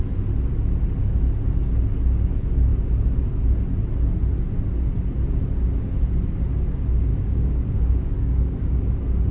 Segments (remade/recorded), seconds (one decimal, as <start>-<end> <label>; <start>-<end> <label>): 0.0-7.1 recorded; 7.1-8.8 remade; 8.8-9.3 recorded